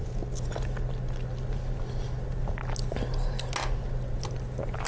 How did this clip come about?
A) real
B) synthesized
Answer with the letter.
A